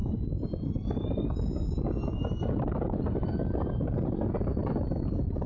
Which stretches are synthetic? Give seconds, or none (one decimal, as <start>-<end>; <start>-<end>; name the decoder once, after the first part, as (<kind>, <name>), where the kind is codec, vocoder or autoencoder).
none